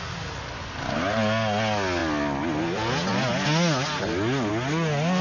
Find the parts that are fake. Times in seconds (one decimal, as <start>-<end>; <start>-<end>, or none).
none